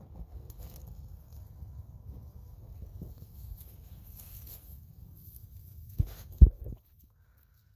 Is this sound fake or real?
fake